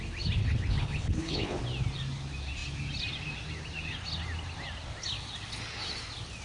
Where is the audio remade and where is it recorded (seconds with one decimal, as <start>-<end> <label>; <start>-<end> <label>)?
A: 0.0-0.4 recorded; 0.4-1.6 remade; 1.6-6.4 recorded